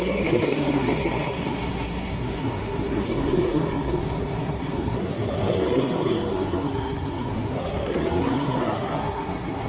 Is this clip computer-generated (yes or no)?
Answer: yes